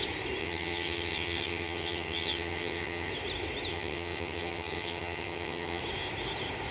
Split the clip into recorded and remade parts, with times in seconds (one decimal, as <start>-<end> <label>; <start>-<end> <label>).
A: 0.0-0.4 recorded; 0.4-3.1 remade; 3.1-3.7 recorded; 3.7-5.8 remade; 5.8-6.7 recorded